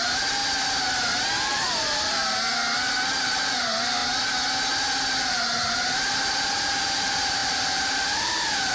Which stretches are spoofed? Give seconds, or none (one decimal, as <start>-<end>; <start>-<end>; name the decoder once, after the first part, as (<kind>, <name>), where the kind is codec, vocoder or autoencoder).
0.0-0.4 (vocoder, BigVGAN v2); 1.4-2.2; 3.1-4.0; 5.2-8.7